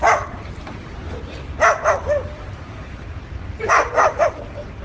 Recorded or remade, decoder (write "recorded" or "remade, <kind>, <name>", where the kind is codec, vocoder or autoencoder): remade, vocoder, BigVGAN v2